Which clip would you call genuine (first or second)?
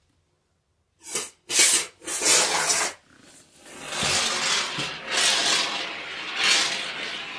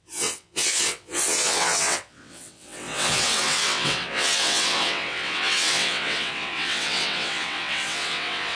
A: first